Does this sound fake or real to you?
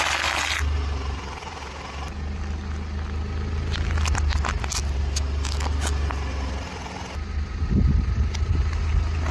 real